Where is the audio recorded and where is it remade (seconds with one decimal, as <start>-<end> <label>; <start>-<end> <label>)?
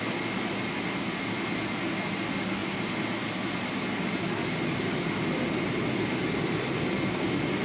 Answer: 0.0-7.6 recorded